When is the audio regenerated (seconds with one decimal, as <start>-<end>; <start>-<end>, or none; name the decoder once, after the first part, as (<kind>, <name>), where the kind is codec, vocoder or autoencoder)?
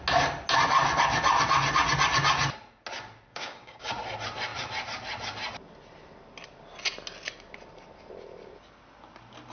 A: 3.3-3.9 (codec, DAC)